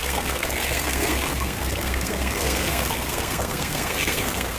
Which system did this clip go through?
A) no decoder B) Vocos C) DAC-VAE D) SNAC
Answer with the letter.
D